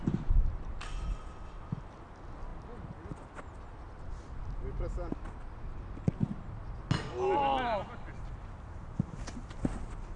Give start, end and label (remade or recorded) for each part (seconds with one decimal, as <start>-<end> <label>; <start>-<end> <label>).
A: 0.0-10.2 recorded